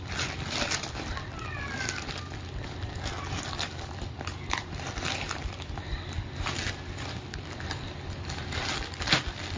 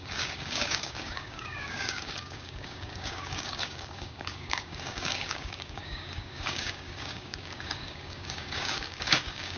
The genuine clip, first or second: first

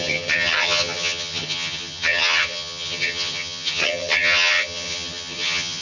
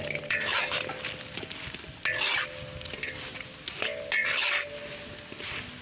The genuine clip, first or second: second